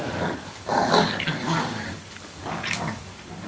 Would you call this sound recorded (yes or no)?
no